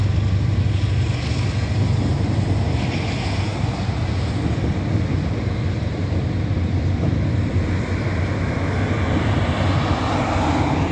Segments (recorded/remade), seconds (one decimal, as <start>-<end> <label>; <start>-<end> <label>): 0.0-10.9 recorded